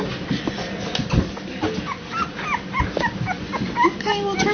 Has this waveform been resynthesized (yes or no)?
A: no